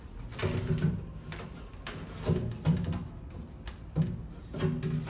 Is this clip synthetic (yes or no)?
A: no